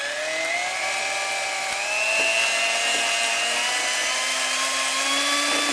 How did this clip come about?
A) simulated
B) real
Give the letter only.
B